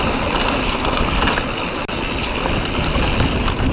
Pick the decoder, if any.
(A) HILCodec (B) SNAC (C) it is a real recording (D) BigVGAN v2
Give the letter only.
C